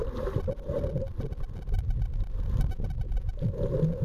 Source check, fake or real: real